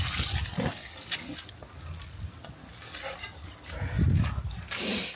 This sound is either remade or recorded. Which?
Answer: recorded